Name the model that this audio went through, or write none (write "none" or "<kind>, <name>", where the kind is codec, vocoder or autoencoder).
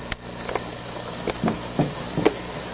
none